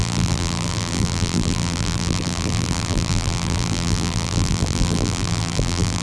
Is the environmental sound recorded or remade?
remade